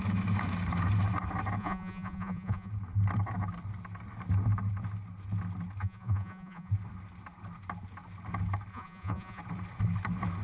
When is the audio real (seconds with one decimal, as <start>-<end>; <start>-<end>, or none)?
0.0-1.6; 2.7-5.8; 6.7-8.7; 9.4-10.4